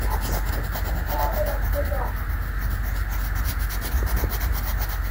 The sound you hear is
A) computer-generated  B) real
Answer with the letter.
B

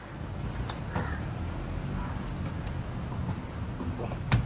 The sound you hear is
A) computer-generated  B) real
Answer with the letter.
B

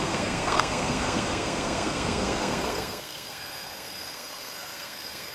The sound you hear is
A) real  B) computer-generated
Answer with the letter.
B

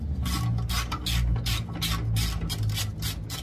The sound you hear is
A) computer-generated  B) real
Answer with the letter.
B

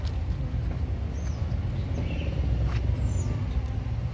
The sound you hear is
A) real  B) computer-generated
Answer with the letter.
A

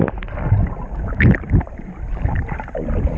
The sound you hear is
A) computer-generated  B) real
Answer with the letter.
B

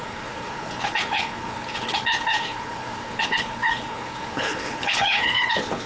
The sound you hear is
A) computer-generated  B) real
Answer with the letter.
A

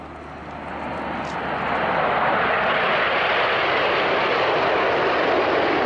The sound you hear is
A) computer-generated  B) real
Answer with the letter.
B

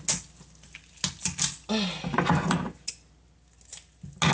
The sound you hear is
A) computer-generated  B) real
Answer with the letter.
B